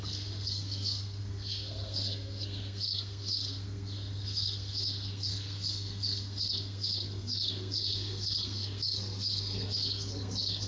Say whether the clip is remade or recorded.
remade